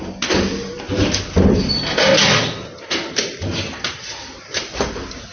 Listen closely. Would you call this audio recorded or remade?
recorded